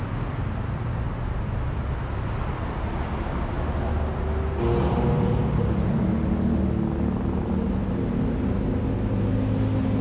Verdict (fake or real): real